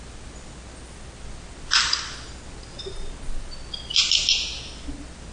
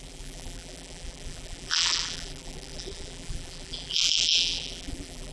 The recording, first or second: first